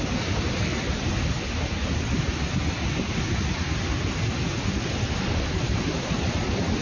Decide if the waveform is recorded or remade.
recorded